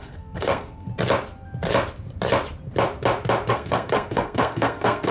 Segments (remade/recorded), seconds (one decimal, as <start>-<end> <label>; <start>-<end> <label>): 0.0-0.9 remade; 0.9-3.5 recorded; 3.5-5.1 remade